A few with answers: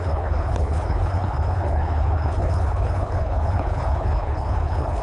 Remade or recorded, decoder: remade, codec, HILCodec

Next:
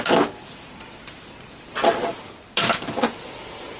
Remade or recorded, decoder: recorded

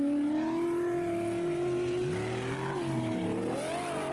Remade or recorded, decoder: recorded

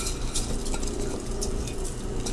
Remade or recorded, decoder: recorded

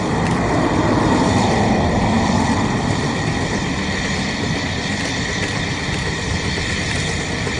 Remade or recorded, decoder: recorded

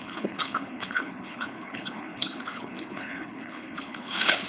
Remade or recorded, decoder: remade, codec, HILCodec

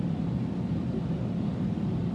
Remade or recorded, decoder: recorded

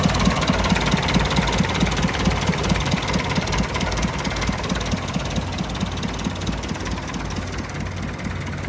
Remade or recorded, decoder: recorded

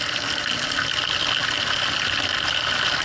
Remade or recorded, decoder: recorded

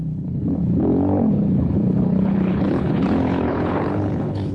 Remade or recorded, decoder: remade, codec, HILCodec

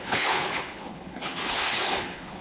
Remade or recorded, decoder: remade, codec, HILCodec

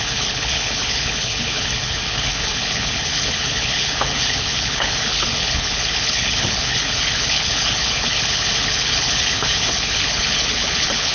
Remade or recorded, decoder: remade, codec, HILCodec